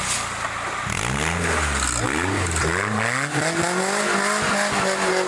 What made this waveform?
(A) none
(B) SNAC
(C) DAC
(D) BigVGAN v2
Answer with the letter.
A